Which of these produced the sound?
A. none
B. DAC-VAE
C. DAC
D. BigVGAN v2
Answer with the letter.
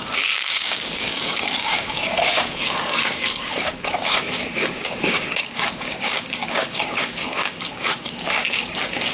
C